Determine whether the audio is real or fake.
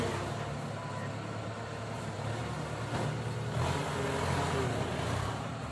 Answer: real